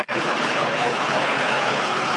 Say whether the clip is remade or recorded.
remade